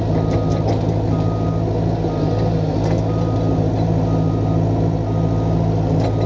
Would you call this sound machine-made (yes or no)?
no